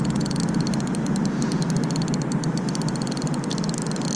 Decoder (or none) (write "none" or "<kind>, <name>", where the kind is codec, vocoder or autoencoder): none